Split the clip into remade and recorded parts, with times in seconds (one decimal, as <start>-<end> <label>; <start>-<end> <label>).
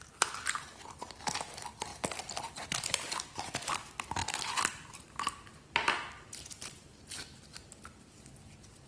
0.0-1.9 recorded; 1.9-3.7 remade; 3.7-4.2 recorded; 4.2-5.2 remade; 5.2-8.9 recorded